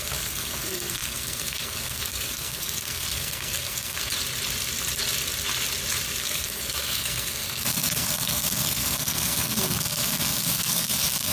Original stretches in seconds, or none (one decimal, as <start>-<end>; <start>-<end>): 4.1-6.2